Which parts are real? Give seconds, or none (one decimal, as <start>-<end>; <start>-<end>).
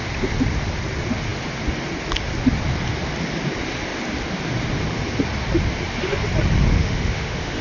0.0-6.7